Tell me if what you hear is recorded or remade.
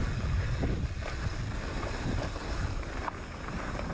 recorded